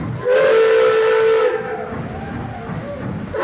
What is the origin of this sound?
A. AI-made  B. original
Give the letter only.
B